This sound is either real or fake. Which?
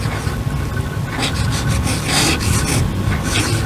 real